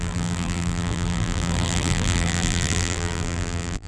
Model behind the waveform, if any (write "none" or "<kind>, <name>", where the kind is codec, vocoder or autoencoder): vocoder, BigVGAN v2